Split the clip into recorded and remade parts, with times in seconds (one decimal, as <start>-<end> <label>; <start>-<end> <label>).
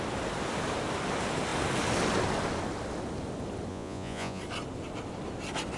0.0-3.7 recorded; 3.7-4.4 remade; 4.4-5.8 recorded